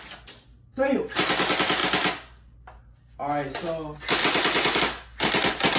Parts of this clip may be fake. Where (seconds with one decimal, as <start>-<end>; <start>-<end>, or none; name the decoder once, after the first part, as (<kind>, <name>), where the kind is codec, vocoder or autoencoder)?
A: 4.2-4.8 (vocoder, BigVGAN v2)